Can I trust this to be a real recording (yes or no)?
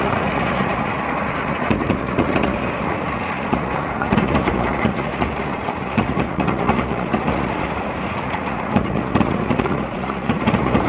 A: no